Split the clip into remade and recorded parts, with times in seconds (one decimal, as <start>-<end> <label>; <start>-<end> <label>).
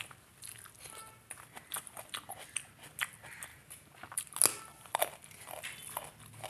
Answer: 0.0-6.5 recorded